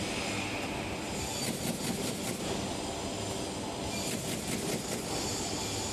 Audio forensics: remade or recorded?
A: recorded